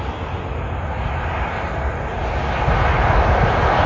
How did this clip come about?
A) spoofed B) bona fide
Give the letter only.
B